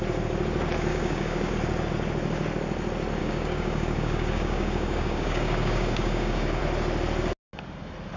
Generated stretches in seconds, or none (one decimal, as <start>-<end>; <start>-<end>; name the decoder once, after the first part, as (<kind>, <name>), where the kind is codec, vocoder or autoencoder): 0.9-1.5 (codec, DAC); 3.2-6.6